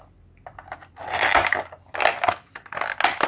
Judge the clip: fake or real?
real